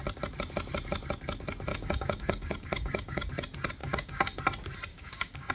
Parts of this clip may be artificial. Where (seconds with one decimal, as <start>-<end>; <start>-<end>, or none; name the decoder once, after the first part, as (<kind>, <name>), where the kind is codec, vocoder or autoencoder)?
1.7-3.3 (codec, DAC); 3.8-4.4; 4.9-5.5